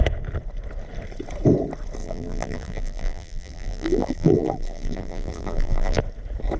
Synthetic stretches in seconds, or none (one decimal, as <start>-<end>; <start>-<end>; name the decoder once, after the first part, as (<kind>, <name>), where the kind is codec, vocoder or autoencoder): 2.0-6.0 (vocoder, BigVGAN v2)